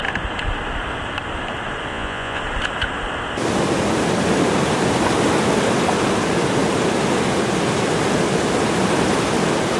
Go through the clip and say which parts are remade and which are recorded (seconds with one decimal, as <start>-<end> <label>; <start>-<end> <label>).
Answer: 0.0-1.9 recorded; 1.9-2.4 remade; 2.4-9.8 recorded